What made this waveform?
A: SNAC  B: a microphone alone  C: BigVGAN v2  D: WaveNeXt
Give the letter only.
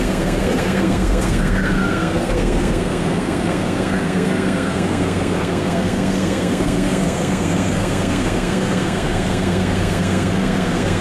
A